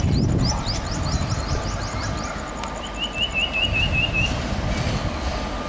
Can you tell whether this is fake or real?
real